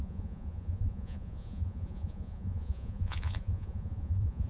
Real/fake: fake